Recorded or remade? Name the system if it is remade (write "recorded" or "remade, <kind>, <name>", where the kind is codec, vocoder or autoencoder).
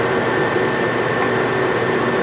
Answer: recorded